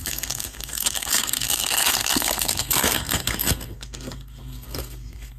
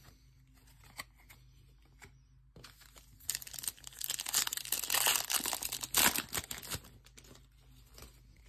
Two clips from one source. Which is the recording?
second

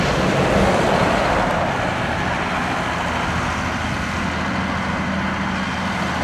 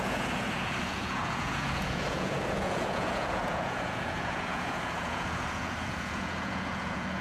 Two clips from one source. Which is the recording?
first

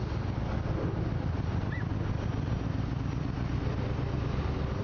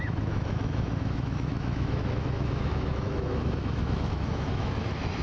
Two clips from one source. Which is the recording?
first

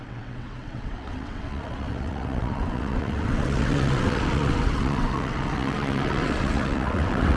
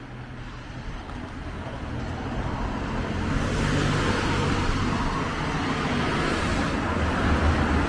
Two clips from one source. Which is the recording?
second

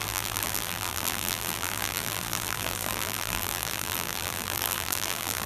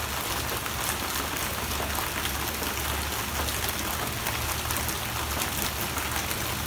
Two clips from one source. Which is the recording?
second